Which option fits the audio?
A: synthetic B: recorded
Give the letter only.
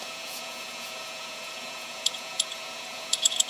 A